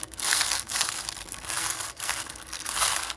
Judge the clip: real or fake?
fake